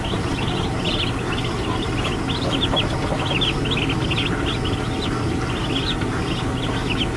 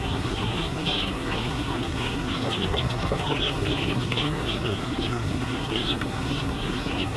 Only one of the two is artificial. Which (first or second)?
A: second